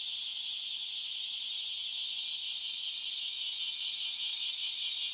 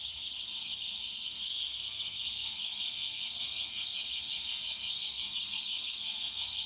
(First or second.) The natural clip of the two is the first